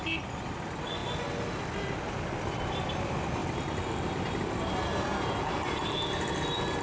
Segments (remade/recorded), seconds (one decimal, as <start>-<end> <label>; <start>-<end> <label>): 0.0-1.0 remade; 1.0-1.6 recorded; 1.6-3.4 remade; 3.4-6.2 recorded; 6.2-6.8 remade